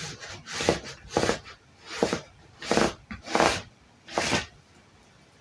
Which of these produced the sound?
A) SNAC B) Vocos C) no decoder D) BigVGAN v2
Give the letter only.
D